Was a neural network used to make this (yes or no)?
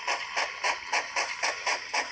no